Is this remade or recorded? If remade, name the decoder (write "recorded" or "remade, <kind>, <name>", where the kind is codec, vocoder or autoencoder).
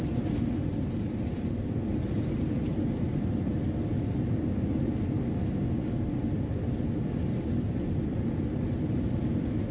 recorded